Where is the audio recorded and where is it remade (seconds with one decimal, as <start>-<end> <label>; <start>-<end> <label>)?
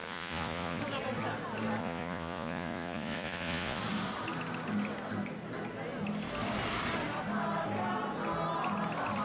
0.0-0.8 remade; 0.8-1.8 recorded; 1.8-3.8 remade; 3.8-9.2 recorded